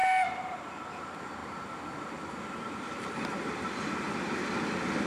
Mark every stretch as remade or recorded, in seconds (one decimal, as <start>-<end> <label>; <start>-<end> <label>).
0.0-5.1 recorded

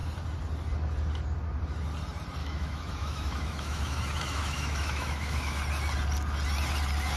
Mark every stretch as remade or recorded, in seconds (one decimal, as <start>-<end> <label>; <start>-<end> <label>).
0.0-2.4 recorded; 2.4-5.6 remade; 5.6-7.2 recorded

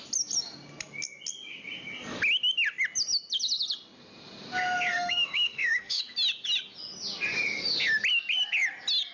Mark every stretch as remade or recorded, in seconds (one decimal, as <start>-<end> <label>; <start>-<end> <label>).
0.0-4.9 recorded; 4.9-6.0 remade; 6.0-9.1 recorded

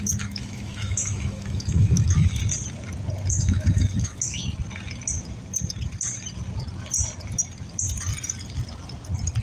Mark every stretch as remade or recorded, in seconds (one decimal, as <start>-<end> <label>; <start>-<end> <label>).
0.0-2.4 remade; 2.4-3.3 recorded; 3.3-4.4 remade; 4.4-9.4 recorded

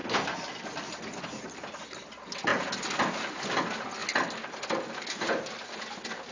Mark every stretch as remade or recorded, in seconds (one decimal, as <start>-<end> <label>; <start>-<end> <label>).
0.0-6.3 recorded